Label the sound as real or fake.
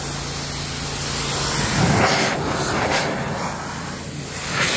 real